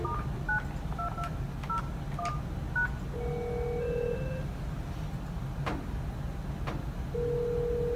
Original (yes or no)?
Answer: yes